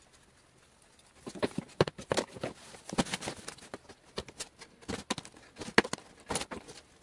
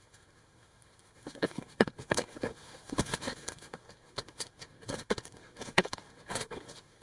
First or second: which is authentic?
first